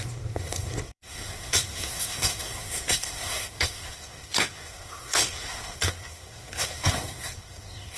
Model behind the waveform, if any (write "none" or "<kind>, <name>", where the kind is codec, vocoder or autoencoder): codec, SNAC